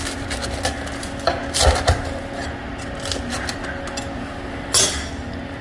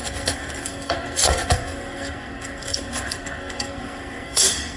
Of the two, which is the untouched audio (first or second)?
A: first